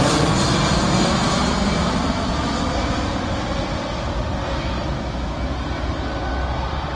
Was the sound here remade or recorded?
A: recorded